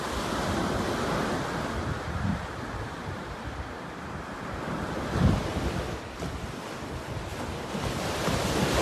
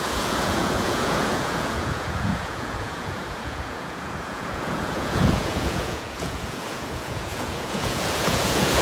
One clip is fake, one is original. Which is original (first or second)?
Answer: first